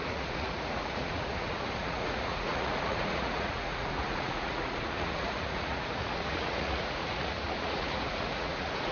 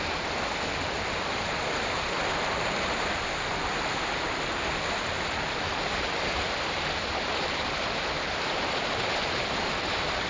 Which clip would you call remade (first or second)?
first